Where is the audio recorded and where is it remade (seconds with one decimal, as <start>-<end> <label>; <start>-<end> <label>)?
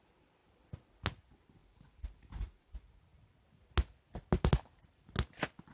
0.0-1.6 recorded; 1.6-2.7 remade; 2.7-5.7 recorded